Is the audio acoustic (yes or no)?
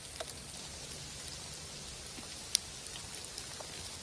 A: yes